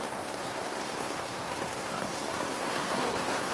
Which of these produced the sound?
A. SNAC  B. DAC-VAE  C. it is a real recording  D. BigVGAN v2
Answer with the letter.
A